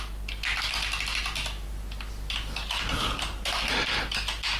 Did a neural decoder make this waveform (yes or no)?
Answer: no